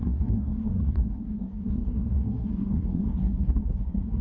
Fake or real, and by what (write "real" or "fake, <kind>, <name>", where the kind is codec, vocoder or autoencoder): fake, codec, SNAC